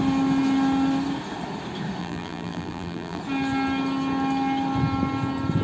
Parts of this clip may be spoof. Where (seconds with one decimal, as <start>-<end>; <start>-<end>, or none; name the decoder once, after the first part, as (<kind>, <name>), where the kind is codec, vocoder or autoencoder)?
2.0-3.2 (vocoder, BigVGAN v2)